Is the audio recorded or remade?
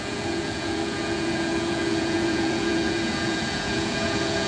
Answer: remade